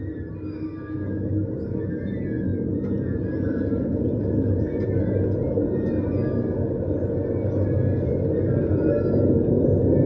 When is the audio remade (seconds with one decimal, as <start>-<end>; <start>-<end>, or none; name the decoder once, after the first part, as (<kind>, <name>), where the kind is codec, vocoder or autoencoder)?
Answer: 2.5-5.0 (vocoder, BigVGAN v2); 8.1-8.9

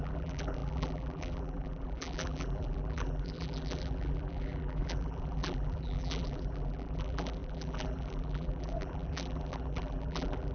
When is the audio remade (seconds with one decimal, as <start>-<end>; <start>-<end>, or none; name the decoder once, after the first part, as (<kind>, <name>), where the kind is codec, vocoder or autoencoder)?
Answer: 0.0-10.5 (vocoder, BigVGAN v2)

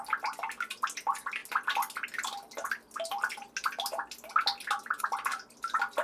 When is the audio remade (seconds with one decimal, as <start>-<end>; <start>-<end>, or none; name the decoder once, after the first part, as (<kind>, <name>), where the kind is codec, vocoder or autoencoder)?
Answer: none

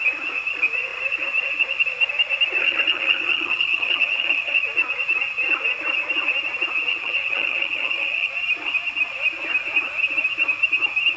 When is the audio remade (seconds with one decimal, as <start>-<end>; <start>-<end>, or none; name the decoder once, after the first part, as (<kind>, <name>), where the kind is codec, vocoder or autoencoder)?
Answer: 2.6-4.6 (vocoder, HiFi-GAN); 6.9-8.3

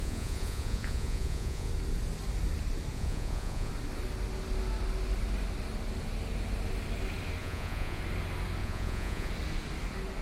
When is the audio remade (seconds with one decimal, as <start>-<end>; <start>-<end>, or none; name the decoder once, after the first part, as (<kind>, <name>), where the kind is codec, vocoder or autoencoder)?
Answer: 0.0-1.7 (vocoder, Vocos); 2.9-3.7; 7.4-8.0; 8.6-9.3

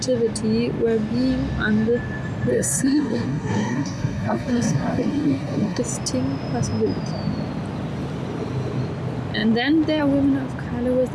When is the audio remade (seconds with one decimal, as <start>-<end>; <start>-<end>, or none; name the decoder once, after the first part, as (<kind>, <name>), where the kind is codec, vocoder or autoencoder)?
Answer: 2.5-5.8 (codec, SNAC)

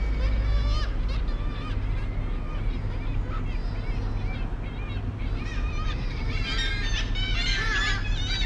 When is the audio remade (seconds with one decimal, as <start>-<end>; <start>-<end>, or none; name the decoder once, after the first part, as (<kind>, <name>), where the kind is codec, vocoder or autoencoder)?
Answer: 5.2-6.7 (vocoder, BigVGAN v2)

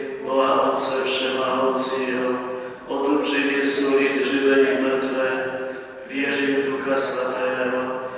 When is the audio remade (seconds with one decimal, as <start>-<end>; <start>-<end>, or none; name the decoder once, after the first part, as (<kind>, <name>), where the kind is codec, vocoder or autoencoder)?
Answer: none